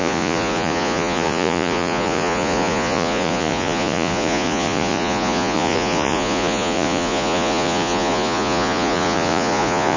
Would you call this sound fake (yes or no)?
yes